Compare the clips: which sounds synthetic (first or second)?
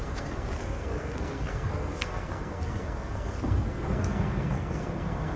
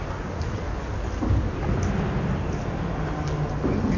first